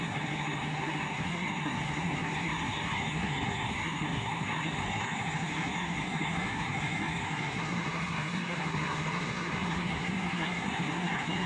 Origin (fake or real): fake